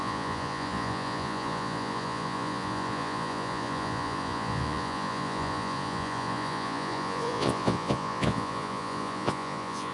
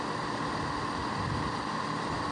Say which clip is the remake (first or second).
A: first